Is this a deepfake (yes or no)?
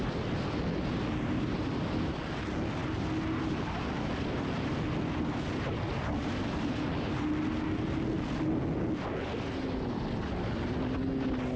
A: no